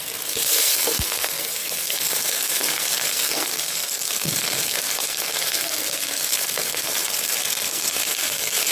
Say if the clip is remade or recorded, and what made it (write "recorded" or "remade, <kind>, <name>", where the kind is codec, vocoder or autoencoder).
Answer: remade, codec, SNAC